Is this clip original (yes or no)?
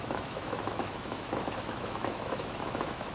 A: no